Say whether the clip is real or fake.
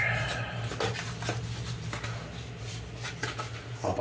real